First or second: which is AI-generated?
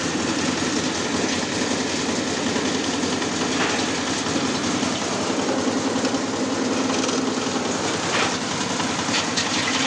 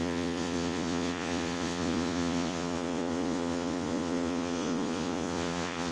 second